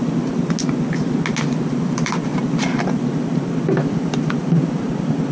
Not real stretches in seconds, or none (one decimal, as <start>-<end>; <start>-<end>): 1.5-2.3; 3.6-5.3